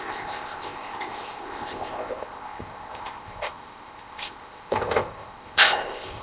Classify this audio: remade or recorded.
remade